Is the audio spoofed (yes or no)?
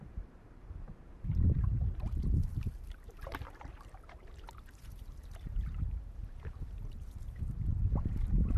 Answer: yes